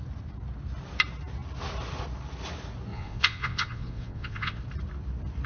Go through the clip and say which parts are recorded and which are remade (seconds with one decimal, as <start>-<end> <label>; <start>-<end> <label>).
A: 0.0-2.9 recorded; 2.9-4.6 remade; 4.6-5.5 recorded